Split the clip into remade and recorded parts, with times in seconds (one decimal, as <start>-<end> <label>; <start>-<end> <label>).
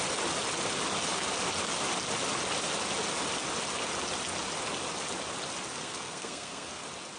0.0-5.8 recorded; 5.8-6.8 remade; 6.8-7.2 recorded